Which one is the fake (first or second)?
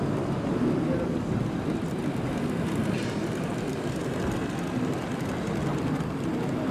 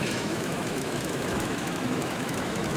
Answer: second